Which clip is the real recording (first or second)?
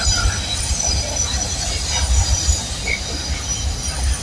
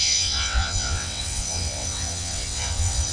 first